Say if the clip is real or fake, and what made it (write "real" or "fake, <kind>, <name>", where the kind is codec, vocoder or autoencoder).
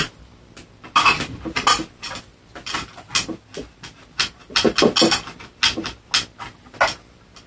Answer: real